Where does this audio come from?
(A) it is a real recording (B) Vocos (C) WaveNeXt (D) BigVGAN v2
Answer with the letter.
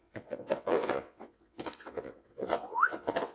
C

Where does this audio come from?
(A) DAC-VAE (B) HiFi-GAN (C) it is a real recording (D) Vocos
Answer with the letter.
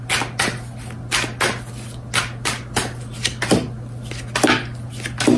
C